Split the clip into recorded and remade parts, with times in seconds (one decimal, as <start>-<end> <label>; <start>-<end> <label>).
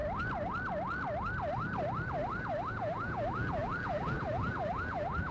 0.0-2.7 recorded; 2.7-5.3 remade